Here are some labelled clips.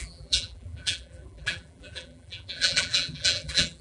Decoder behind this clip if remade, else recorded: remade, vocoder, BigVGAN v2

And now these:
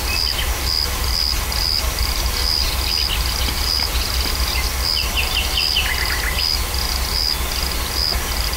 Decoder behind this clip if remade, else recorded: recorded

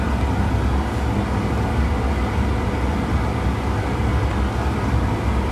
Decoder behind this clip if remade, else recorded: recorded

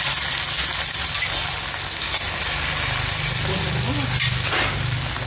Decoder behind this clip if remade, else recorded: recorded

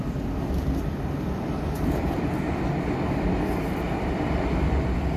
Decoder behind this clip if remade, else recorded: remade, vocoder, BigVGAN v2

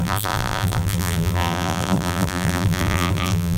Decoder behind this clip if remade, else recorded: remade, vocoder, BigVGAN v2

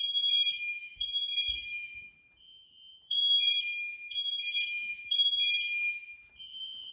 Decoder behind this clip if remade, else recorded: remade, vocoder, BigVGAN v2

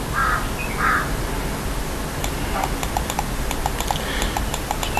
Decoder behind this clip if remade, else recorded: recorded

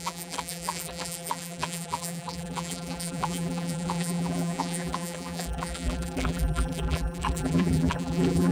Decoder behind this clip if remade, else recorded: remade, vocoder, BigVGAN v2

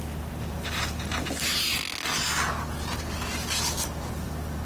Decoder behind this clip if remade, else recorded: recorded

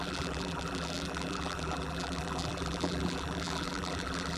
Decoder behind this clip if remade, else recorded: remade, vocoder, BigVGAN v2